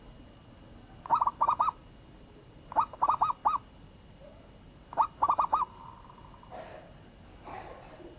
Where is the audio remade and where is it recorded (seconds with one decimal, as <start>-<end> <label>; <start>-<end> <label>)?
0.0-8.2 recorded